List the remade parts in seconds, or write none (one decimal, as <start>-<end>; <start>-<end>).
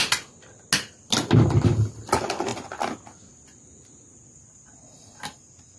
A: none